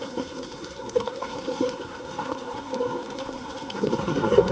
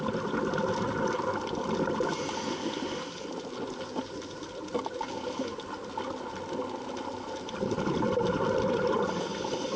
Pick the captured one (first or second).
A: second